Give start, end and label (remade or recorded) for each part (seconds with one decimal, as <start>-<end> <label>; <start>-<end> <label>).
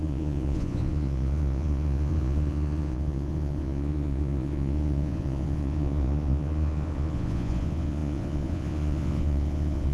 0.0-9.9 remade